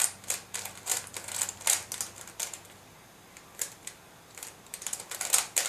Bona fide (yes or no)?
yes